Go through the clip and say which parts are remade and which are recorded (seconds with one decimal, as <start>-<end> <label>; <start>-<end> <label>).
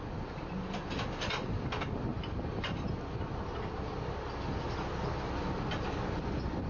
0.0-2.1 recorded; 2.1-2.9 remade; 2.9-6.7 recorded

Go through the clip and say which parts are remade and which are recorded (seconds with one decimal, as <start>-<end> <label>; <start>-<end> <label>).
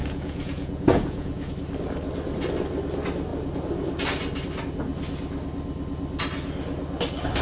0.0-1.5 remade; 1.5-7.4 recorded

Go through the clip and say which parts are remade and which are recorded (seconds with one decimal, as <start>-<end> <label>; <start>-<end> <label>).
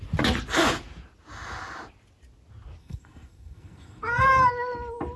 0.0-2.8 recorded; 2.8-4.5 remade; 4.5-5.2 recorded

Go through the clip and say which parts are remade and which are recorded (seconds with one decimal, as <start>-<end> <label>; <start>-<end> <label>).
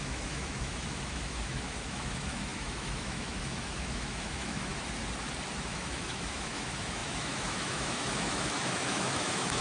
0.0-4.7 remade; 4.7-5.6 recorded; 5.6-9.6 remade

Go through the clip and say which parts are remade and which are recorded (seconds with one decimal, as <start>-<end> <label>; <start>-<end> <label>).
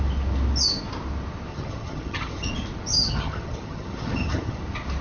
0.0-1.5 recorded; 1.5-2.5 remade; 2.5-2.9 recorded; 2.9-4.6 remade; 4.6-5.0 recorded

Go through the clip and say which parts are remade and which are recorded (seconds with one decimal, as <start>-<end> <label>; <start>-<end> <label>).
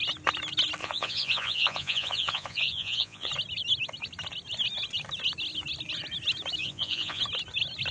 0.0-0.8 recorded; 0.8-3.3 remade; 3.3-6.6 recorded; 6.6-7.2 remade; 7.2-7.9 recorded